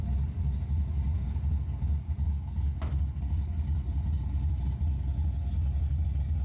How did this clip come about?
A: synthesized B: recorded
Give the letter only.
B